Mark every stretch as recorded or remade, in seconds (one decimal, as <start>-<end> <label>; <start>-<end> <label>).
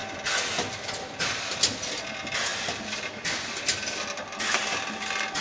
0.0-5.4 recorded